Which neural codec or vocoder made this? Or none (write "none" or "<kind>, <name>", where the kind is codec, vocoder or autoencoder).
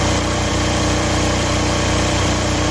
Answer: vocoder, BigVGAN v2